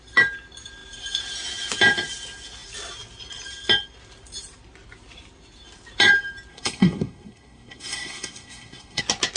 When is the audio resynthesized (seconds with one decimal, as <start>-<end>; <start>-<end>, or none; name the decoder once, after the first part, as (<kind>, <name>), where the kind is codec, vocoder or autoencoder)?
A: 6.5-9.0 (codec, SNAC)